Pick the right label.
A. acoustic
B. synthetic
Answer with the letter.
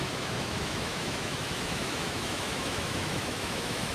B